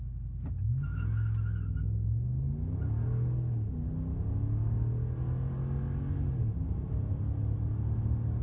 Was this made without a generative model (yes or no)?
yes